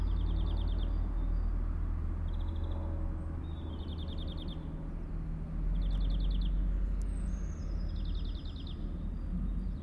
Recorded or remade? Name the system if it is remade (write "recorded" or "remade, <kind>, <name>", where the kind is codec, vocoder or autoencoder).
recorded